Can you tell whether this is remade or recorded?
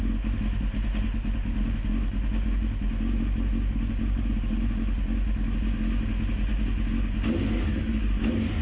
recorded